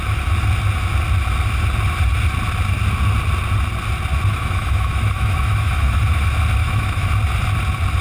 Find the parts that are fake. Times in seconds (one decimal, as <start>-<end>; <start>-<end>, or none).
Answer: 4.3-6.0; 6.6-7.1